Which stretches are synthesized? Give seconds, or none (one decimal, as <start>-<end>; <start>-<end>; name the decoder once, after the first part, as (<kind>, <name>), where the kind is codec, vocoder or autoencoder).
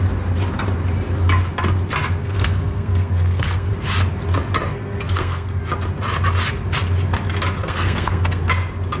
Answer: 2.2-3.7 (codec, SNAC); 4.7-5.6; 7.6-8.4